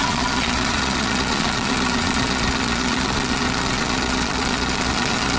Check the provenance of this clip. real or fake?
fake